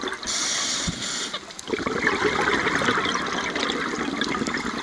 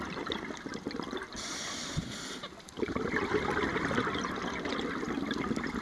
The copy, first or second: second